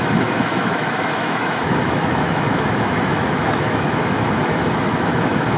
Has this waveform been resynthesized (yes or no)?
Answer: yes